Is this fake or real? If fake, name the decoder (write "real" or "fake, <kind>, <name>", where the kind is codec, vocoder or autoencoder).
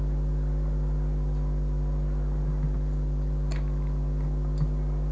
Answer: real